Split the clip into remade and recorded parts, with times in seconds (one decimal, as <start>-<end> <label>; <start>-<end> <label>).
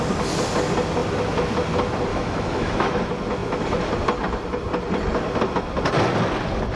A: 0.0-2.1 recorded; 2.1-3.0 remade; 3.0-6.8 recorded